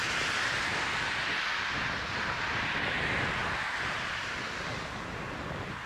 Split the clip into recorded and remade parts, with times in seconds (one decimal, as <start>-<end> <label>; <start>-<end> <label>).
0.0-5.9 recorded